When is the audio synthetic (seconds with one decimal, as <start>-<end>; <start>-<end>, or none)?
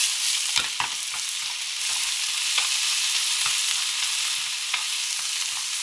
none